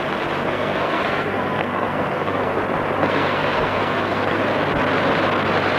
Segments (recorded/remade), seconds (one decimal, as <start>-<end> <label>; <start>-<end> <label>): 0.0-0.4 recorded; 0.4-2.6 remade; 2.6-3.0 recorded; 3.0-4.4 remade; 4.4-5.8 recorded